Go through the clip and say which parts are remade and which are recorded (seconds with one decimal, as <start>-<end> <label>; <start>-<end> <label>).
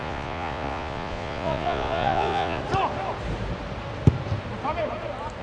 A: 0.0-2.6 remade; 2.6-5.4 recorded